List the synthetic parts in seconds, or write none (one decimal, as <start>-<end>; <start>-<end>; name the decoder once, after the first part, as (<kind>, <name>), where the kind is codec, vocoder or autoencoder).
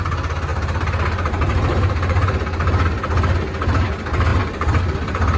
0.5-3.0 (vocoder, BigVGAN v2); 4.3-4.8